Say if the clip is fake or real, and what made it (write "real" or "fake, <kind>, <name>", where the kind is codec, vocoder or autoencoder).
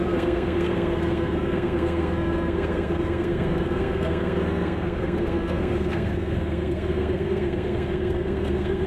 fake, codec, SNAC